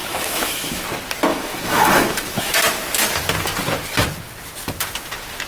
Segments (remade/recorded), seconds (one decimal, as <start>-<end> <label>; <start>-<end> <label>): 0.0-0.8 remade; 0.8-1.3 recorded; 1.3-2.5 remade; 2.5-5.5 recorded